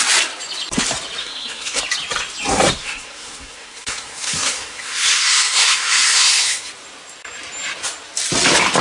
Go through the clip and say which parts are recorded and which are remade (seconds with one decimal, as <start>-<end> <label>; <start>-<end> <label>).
0.0-1.2 recorded; 1.2-1.8 remade; 1.8-2.8 recorded; 2.8-6.7 remade; 6.7-8.8 recorded

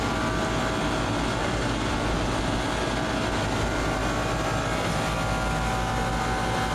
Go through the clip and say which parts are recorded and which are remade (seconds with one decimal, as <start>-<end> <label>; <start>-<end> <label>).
0.0-1.4 recorded; 1.4-1.9 remade; 1.9-6.7 recorded